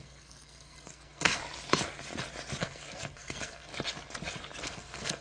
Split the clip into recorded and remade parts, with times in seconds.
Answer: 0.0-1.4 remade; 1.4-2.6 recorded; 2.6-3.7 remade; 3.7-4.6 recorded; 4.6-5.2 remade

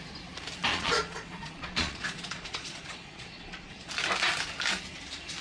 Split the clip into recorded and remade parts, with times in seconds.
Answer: 0.0-0.7 recorded; 0.7-3.9 remade; 3.9-5.4 recorded